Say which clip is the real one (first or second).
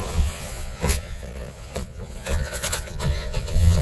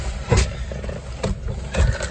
second